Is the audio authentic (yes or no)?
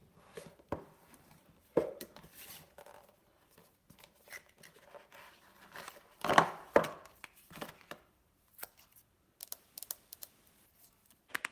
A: no